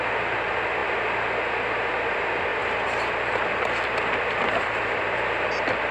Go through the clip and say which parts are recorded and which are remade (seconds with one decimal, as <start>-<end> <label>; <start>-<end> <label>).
0.0-5.9 recorded